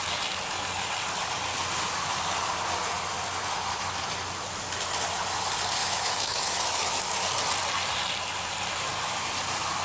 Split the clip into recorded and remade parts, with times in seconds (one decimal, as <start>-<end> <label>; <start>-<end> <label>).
0.0-5.8 recorded; 5.8-7.0 remade; 7.0-9.8 recorded